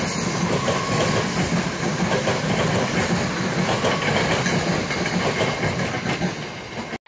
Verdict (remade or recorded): recorded